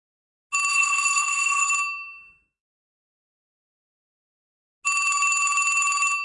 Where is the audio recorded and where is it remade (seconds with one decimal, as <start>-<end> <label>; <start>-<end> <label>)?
0.0-0.7 recorded; 0.7-1.7 remade; 1.7-6.2 recorded